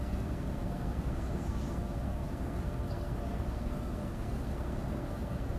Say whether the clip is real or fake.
fake